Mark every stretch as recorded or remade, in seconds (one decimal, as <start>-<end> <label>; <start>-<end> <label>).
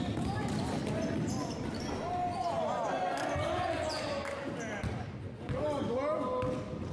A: 0.0-6.9 recorded